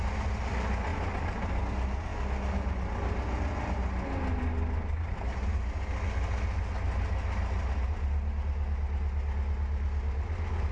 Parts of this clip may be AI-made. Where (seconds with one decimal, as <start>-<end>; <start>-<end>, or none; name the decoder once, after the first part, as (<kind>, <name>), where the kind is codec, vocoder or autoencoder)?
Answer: none